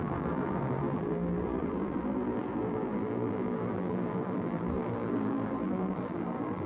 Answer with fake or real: fake